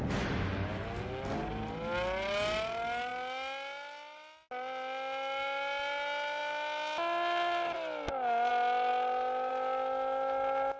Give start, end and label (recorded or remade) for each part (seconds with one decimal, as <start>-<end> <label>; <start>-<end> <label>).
0.0-10.8 recorded